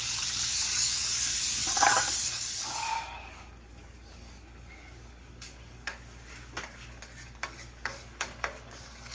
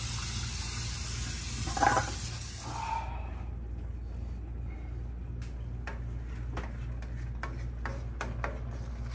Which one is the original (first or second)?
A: second